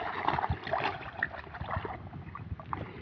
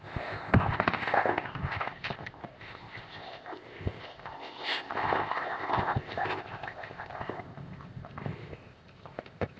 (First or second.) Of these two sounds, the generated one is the second